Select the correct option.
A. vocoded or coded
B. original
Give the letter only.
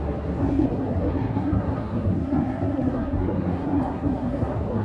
A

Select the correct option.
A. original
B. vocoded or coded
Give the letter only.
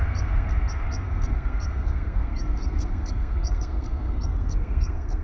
B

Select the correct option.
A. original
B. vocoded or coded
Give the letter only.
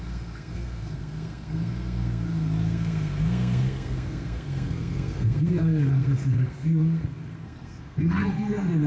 B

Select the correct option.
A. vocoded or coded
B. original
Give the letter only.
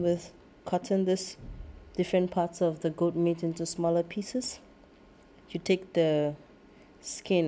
B